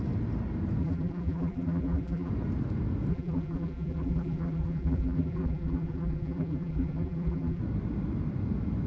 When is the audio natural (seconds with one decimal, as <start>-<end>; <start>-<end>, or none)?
0.0-0.8; 2.3-3.1; 7.6-8.9